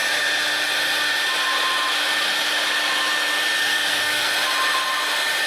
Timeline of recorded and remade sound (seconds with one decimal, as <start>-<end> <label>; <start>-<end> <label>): 0.0-3.7 recorded; 3.7-4.3 remade; 4.3-5.5 recorded